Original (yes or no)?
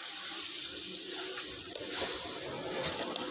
yes